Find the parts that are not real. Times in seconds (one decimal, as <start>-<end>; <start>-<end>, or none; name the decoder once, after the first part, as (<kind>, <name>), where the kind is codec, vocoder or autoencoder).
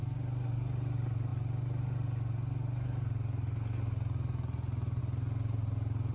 none